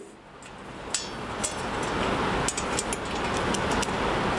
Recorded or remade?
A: recorded